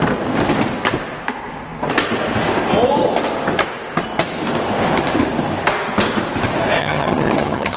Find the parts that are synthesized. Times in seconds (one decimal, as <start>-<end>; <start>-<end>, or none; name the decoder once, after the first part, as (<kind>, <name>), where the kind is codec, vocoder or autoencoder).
6.8-7.8 (vocoder, HiFi-GAN)